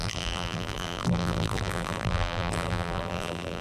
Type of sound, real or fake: fake